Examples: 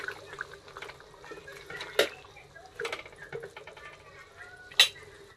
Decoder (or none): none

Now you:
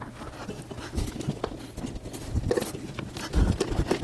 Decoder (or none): none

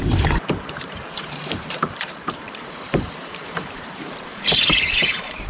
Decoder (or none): vocoder, BigVGAN v2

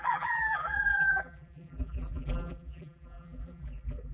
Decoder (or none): vocoder, BigVGAN v2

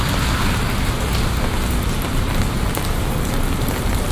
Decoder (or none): none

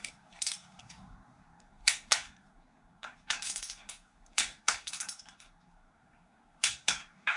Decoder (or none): codec, SNAC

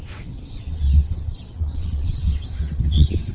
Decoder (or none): vocoder, WaveNeXt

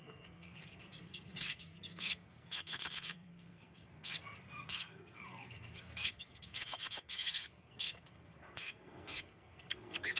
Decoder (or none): codec, SNAC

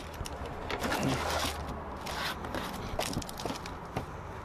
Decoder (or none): none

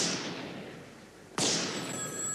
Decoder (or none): none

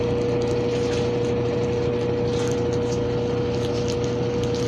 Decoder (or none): none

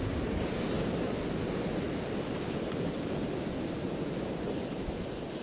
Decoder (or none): none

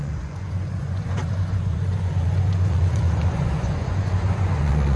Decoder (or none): vocoder, Vocos